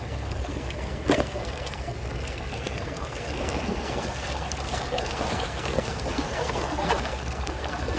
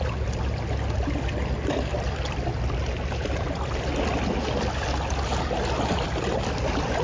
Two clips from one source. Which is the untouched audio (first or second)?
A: second